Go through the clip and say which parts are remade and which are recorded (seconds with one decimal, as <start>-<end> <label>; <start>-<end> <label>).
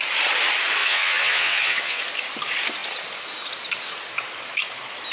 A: 0.0-0.8 recorded; 0.8-2.0 remade; 2.0-5.1 recorded